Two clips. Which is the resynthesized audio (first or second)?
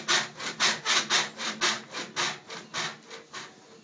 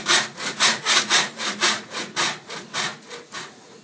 second